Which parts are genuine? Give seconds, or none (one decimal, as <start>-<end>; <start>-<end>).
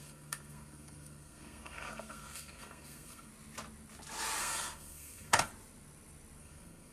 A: 3.3-4.4; 5.5-6.4